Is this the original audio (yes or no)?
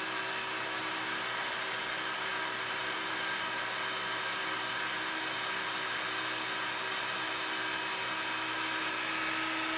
yes